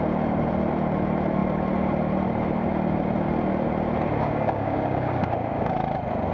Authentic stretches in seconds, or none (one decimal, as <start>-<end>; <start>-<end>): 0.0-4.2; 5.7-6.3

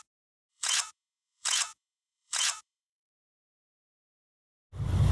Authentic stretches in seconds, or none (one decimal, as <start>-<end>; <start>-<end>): 0.0-0.5; 3.6-5.1

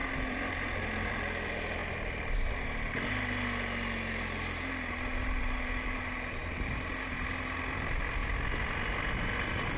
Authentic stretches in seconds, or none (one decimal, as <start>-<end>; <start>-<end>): 0.0-9.8

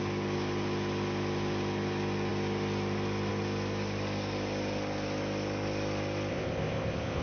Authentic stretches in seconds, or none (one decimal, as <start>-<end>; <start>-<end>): 0.0-6.3

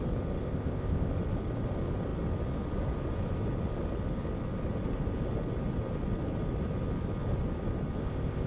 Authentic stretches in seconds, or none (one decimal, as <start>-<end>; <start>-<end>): 0.0-0.4; 1.1-8.0

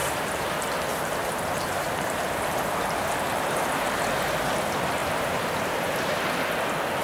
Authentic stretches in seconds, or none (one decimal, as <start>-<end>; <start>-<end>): 0.5-0.9; 4.3-5.0; 6.2-7.0

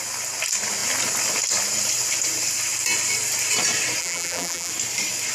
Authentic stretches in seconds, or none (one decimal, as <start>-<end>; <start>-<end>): 0.0-4.0; 4.7-5.3

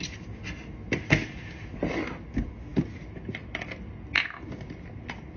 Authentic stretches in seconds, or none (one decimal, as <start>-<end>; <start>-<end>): 0.0-5.4